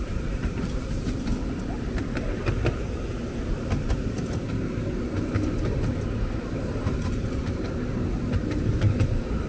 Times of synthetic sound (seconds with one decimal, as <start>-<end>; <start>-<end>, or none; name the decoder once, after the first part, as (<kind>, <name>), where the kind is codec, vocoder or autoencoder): 0.0-1.3 (vocoder, BigVGAN v2); 6.4-9.5